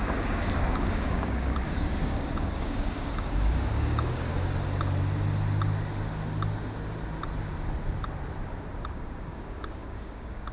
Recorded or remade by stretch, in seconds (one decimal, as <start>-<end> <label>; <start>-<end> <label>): 0.0-4.3 remade; 4.3-8.9 recorded; 8.9-10.5 remade